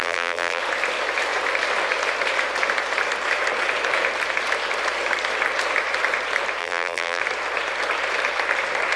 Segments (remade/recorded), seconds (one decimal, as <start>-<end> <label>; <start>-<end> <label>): 0.0-0.6 remade; 0.6-6.6 recorded; 6.6-7.2 remade; 7.2-9.0 recorded